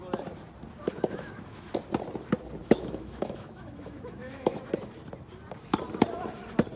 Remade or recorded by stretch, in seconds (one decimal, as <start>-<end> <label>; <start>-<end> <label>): 0.0-0.9 recorded; 0.9-1.7 remade; 1.7-2.6 recorded; 2.6-4.6 remade; 4.6-6.8 recorded